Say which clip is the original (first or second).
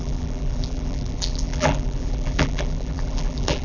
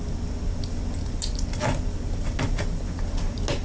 second